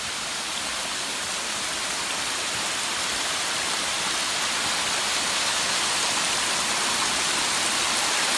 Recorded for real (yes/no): yes